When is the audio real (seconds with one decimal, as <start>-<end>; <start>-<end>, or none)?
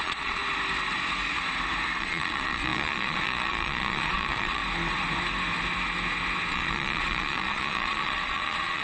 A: 0.4-2.0; 4.6-6.5